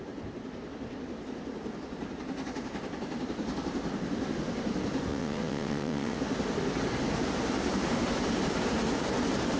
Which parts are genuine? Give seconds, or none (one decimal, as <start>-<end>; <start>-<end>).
0.0-5.1; 6.2-9.6